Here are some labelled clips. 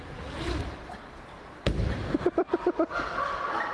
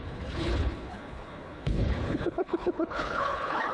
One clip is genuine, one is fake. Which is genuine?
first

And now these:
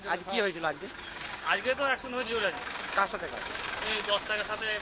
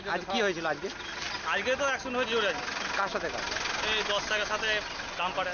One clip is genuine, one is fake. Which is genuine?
second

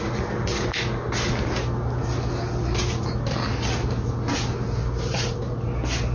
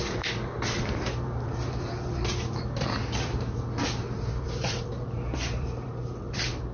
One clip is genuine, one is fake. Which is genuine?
first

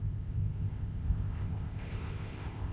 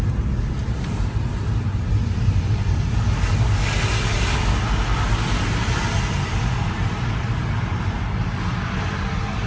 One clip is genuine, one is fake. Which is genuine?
second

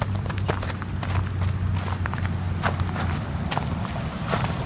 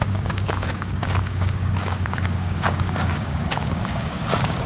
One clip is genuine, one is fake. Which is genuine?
first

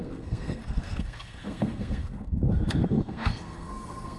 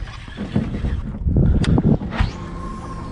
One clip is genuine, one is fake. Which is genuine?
second